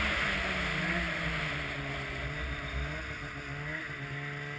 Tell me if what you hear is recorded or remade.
recorded